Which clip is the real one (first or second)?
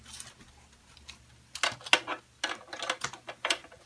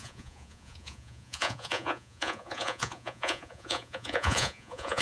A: first